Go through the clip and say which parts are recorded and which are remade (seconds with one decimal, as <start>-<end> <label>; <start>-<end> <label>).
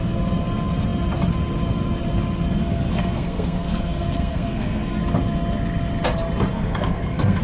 0.0-2.6 recorded; 2.6-5.0 remade; 5.0-6.5 recorded; 6.5-7.4 remade